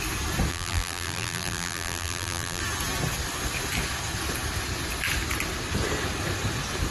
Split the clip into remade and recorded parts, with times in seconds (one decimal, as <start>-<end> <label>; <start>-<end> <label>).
0.0-0.5 recorded; 0.5-2.6 remade; 2.6-6.9 recorded